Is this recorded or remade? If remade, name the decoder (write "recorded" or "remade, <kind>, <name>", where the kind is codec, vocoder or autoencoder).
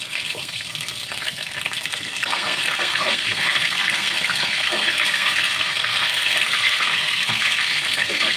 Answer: remade, codec, SNAC